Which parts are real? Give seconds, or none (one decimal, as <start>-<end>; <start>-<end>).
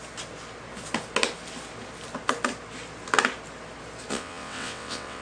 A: 0.0-4.1